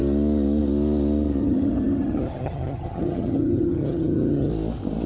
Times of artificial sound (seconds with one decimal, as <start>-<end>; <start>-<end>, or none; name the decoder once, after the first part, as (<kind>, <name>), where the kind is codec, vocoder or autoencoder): 1.4-4.5 (vocoder, HiFi-GAN)